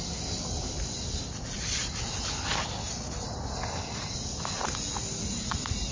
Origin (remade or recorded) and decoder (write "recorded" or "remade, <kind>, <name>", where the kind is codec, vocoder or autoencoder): recorded